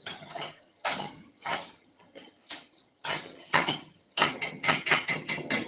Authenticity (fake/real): fake